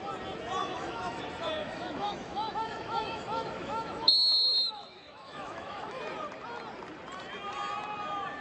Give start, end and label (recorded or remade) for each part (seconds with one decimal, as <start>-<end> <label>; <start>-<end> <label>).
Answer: 0.0-0.6 recorded; 0.6-1.2 remade; 1.2-1.6 recorded; 1.6-6.0 remade; 6.0-8.4 recorded